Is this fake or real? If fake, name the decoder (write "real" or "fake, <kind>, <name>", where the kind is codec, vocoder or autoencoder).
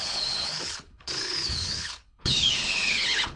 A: fake, codec, HILCodec